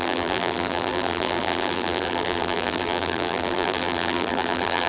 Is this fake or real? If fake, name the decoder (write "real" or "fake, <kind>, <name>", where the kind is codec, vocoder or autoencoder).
fake, vocoder, BigVGAN v2